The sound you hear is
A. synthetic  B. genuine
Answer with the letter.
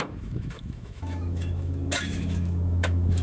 A